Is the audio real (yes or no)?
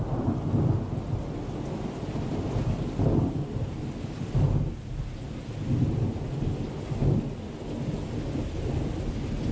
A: yes